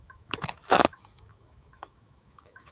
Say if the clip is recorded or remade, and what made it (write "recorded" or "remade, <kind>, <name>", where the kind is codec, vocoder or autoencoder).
remade, autoencoder, DAC-VAE